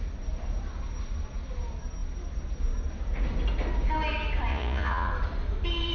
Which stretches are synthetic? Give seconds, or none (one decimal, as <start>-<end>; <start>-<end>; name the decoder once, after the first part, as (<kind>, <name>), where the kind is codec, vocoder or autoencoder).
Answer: 4.5-5.1 (vocoder, Vocos)